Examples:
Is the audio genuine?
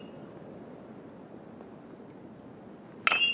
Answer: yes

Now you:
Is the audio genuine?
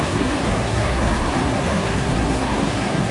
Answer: no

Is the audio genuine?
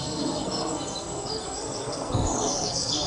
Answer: no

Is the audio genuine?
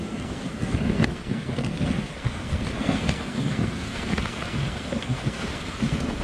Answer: no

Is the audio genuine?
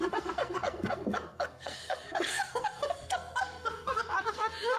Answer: no